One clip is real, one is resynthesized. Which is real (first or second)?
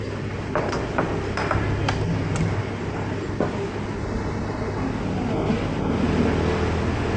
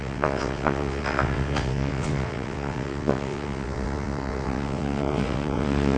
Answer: first